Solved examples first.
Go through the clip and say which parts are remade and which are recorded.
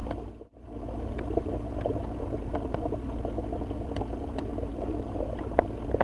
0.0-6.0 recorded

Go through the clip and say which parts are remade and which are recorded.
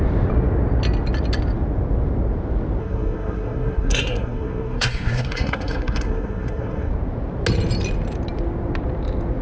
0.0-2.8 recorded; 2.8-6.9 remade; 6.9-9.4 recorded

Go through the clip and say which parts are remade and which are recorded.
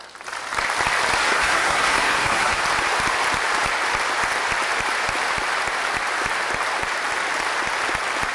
0.0-1.2 recorded; 1.2-2.6 remade; 2.6-8.3 recorded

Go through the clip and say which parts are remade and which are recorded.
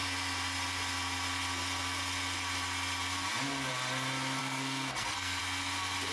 0.0-4.4 recorded; 4.4-5.4 remade; 5.4-6.1 recorded